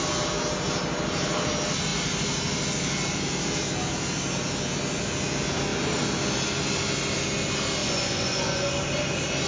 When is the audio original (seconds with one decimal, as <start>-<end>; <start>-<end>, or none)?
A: 0.0-7.8; 8.7-9.5